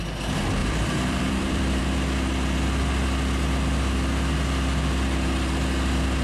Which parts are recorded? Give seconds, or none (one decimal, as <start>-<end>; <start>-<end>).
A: 0.0-0.6; 1.8-6.2